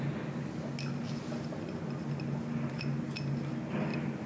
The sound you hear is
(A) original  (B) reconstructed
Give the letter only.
A